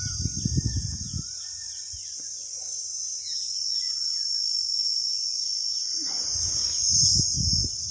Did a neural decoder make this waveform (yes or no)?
no